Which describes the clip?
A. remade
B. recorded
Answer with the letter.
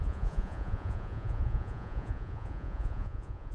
A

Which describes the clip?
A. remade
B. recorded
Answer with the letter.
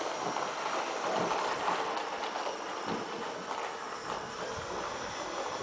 B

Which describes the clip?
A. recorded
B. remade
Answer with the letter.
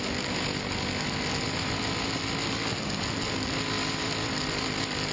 A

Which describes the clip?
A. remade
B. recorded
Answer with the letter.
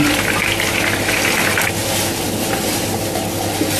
B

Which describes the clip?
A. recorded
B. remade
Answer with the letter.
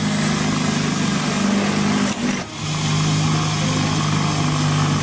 A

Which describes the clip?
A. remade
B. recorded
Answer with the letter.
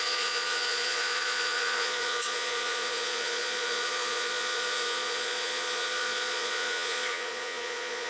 A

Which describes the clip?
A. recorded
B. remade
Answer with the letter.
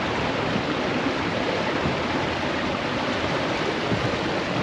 A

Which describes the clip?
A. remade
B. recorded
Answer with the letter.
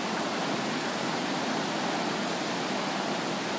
B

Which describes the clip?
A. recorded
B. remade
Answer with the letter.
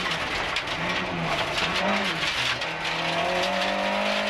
A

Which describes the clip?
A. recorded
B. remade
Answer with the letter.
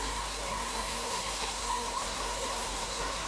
B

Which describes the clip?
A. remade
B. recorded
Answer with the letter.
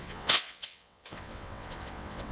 A